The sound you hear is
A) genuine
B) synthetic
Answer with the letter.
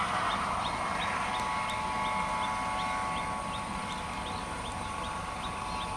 A